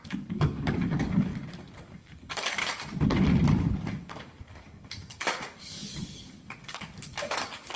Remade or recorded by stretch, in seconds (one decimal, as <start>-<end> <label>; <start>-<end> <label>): 0.0-1.3 remade; 1.3-1.8 recorded; 1.8-2.6 remade; 2.6-4.0 recorded; 4.0-7.8 remade